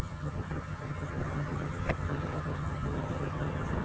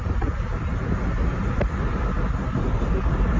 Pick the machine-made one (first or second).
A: first